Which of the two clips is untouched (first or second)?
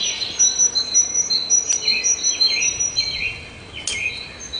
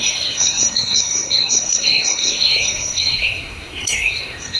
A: first